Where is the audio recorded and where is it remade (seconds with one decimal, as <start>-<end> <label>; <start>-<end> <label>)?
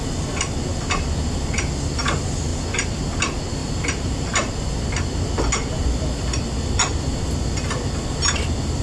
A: 0.0-2.5 recorded; 2.5-3.0 remade; 3.0-3.6 recorded; 3.6-4.5 remade; 4.5-8.8 recorded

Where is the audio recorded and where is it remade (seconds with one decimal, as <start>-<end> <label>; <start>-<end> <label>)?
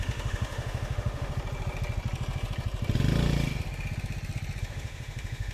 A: 0.0-1.3 remade; 1.3-4.6 recorded; 4.6-5.5 remade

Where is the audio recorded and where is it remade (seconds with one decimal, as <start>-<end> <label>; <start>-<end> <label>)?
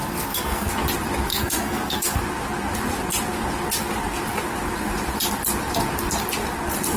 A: 0.0-0.7 remade; 0.7-1.3 recorded; 1.3-2.2 remade; 2.2-7.0 recorded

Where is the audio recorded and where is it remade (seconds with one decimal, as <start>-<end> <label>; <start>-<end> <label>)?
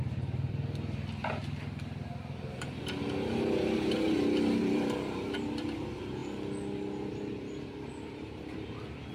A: 0.0-1.4 remade; 1.4-4.6 recorded; 4.6-6.2 remade; 6.2-7.1 recorded; 7.1-9.1 remade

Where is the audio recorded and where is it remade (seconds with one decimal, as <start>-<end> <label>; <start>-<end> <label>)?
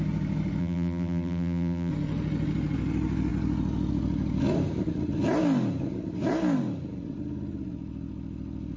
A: 0.0-0.6 recorded; 0.6-1.9 remade; 1.9-8.8 recorded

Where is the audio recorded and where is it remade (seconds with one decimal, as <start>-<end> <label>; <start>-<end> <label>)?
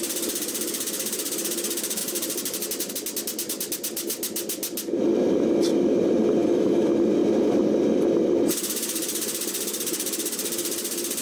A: 0.0-6.4 recorded; 6.4-6.9 remade; 6.9-11.2 recorded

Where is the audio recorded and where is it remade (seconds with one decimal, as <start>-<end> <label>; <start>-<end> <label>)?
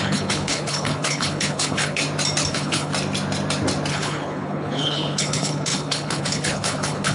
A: 0.0-2.0 remade; 2.0-2.5 recorded; 2.5-2.9 remade; 2.9-3.9 recorded; 3.9-7.1 remade